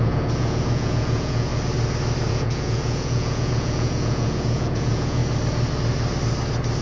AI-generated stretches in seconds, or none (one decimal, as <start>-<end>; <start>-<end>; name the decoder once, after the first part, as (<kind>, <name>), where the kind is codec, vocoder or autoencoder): 0.0-1.5 (vocoder, Vocos); 2.3-5.2